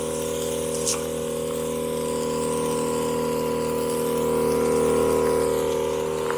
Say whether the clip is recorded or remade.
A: recorded